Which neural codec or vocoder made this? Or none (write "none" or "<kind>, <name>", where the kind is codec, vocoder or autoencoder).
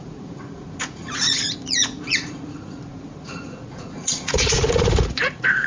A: vocoder, Vocos